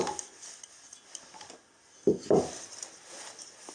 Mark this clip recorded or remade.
recorded